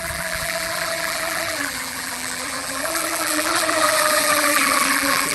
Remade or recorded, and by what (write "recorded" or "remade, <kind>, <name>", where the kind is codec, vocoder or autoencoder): remade, vocoder, BigVGAN v2